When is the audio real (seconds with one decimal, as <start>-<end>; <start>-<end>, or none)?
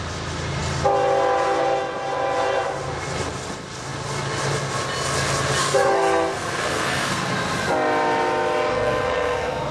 0.0-5.6; 7.3-8.7